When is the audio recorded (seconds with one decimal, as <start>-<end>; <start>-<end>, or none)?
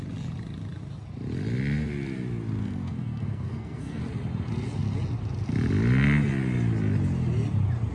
0.0-2.6; 4.0-7.9